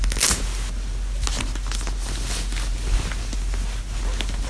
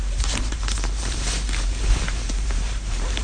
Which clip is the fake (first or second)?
second